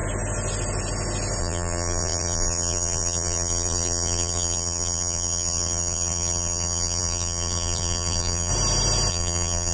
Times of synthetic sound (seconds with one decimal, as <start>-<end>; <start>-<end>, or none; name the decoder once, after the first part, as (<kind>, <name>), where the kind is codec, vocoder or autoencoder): 1.4-8.5 (vocoder, BigVGAN v2); 9.1-9.7